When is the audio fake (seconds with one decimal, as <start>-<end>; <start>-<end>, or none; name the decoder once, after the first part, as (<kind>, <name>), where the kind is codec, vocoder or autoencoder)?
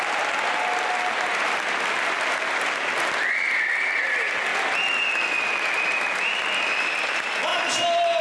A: none